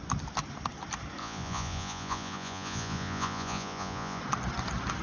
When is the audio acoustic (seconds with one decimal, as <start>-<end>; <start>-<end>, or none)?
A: 0.0-1.2; 4.2-5.0